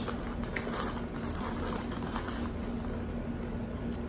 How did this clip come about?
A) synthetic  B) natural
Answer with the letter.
B